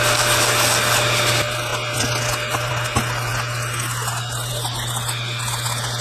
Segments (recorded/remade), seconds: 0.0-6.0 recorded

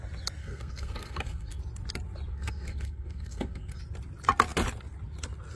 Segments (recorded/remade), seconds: 0.0-0.4 recorded; 0.4-1.6 remade; 1.6-2.3 recorded; 2.3-3.8 remade; 3.8-5.6 recorded

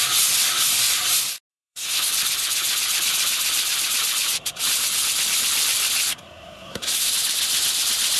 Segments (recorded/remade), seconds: 0.0-1.5 recorded; 1.5-2.1 remade; 2.1-6.1 recorded; 6.1-7.1 remade; 7.1-8.2 recorded

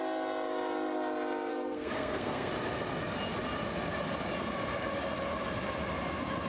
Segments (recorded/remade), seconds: 0.0-1.5 recorded; 1.5-2.5 remade; 2.5-6.5 recorded

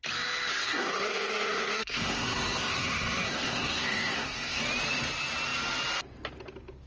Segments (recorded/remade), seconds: 0.0-0.5 recorded; 0.5-4.6 remade; 4.6-6.9 recorded

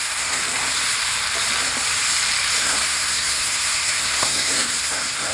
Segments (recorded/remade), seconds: 0.0-0.4 remade; 0.4-2.6 recorded; 2.6-5.3 remade